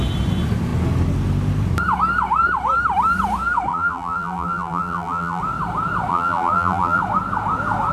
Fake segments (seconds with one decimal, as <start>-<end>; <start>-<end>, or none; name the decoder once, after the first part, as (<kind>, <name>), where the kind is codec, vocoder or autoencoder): 3.7-5.4 (vocoder, BigVGAN v2); 6.1-7.0